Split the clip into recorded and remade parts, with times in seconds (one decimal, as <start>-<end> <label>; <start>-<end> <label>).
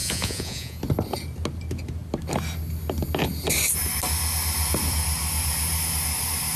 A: 0.0-0.8 remade; 0.8-6.6 recorded